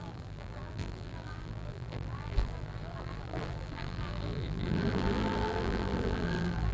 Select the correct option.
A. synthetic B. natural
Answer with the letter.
A